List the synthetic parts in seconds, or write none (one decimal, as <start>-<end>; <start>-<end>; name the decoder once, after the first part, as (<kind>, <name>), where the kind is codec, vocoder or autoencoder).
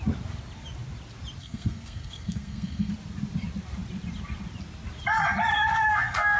1.4-2.9 (codec, SNAC); 5.5-6.4